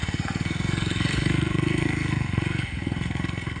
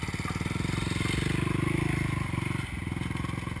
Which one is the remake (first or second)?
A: first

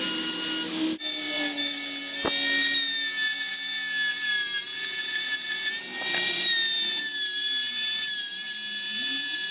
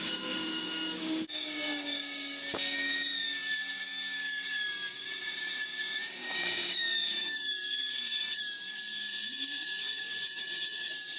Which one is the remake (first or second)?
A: second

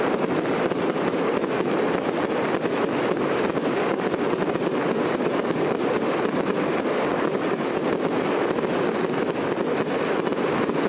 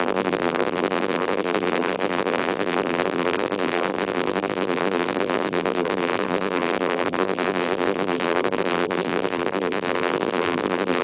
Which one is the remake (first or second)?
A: second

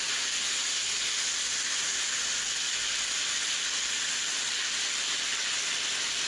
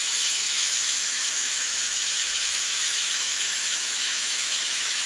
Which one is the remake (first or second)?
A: second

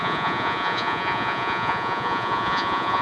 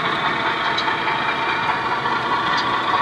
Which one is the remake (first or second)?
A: first